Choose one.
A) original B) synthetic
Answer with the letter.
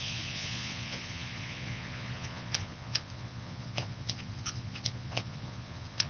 B